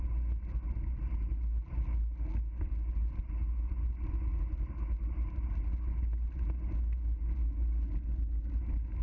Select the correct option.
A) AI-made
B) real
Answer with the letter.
B